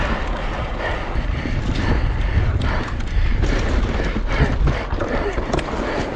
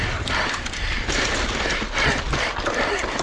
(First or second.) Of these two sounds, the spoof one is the second